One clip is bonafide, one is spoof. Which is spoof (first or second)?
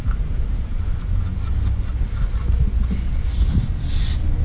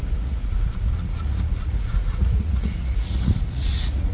second